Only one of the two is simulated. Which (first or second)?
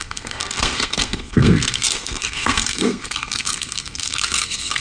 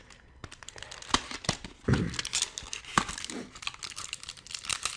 first